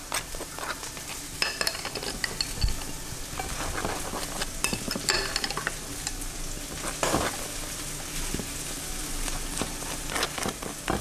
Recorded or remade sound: recorded